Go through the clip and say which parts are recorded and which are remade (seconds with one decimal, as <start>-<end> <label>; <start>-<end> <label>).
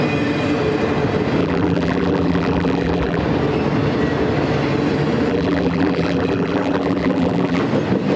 0.0-1.4 recorded; 1.4-3.2 remade; 3.2-5.3 recorded; 5.3-7.6 remade; 7.6-8.2 recorded